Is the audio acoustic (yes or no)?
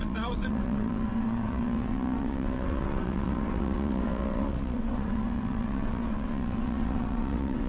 no